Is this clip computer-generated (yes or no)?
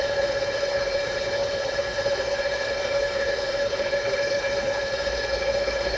yes